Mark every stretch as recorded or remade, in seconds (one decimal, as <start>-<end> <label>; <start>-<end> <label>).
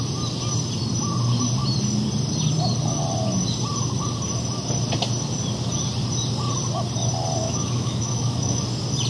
0.0-7.4 recorded; 7.4-8.6 remade; 8.6-9.1 recorded